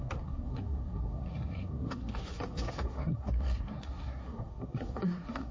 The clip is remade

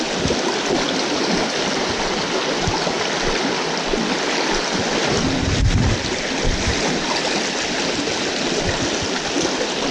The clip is recorded